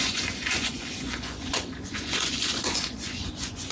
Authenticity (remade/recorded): remade